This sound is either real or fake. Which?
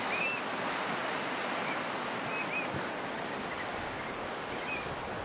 real